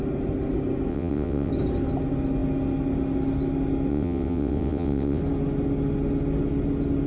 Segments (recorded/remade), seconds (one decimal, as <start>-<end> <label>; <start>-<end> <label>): 0.0-0.9 recorded; 0.9-1.5 remade; 1.5-3.9 recorded; 3.9-5.2 remade; 5.2-7.1 recorded